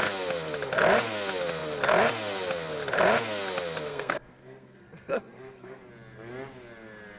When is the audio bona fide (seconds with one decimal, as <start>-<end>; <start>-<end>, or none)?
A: 0.0-3.9; 5.8-7.2